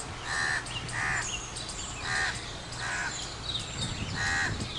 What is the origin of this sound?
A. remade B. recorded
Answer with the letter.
B